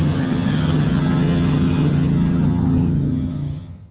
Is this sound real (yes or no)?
no